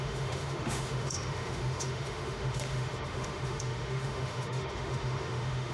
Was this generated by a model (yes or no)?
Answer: yes